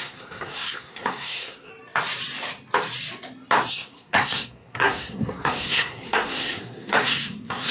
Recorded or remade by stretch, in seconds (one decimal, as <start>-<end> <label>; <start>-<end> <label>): 0.0-1.7 remade; 1.7-3.7 recorded; 3.7-7.7 remade